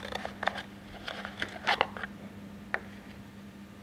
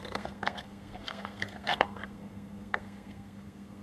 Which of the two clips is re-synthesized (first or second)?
second